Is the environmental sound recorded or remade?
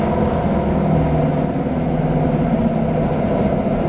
recorded